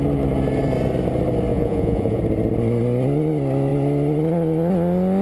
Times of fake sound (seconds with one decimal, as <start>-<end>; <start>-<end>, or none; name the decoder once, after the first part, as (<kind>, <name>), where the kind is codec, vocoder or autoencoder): 1.5-2.2 (vocoder, Vocos)